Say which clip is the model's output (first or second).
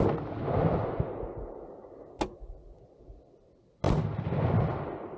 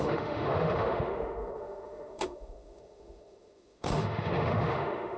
second